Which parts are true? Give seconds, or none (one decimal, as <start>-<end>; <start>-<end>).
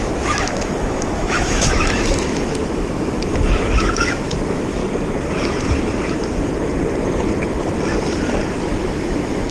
4.8-8.7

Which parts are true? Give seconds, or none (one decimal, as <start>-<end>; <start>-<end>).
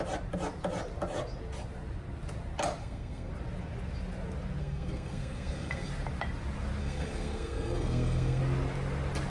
0.0-2.8; 3.3-4.6; 5.9-6.8; 8.4-9.3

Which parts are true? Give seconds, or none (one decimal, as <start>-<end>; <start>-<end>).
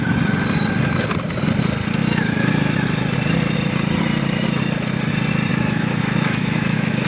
0.0-5.5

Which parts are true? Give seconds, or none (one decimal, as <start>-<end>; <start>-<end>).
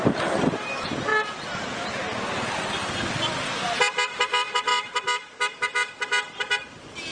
0.0-7.1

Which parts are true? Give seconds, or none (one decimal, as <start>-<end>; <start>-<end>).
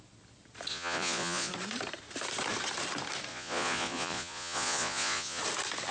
0.0-0.7; 1.5-3.3; 5.4-5.9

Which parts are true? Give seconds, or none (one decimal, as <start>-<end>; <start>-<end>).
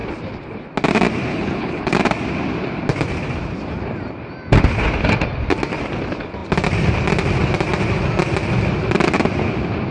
0.0-1.3; 1.9-9.9